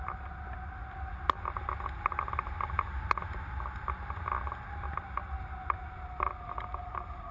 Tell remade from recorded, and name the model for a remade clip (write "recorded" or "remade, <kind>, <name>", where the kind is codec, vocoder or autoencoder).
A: recorded